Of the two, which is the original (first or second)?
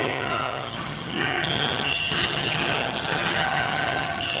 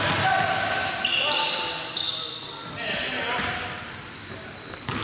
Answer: second